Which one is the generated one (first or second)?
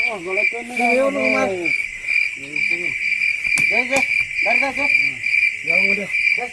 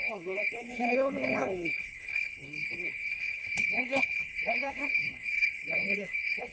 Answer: second